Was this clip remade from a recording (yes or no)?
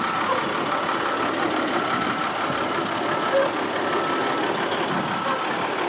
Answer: no